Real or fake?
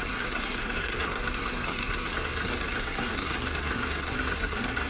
fake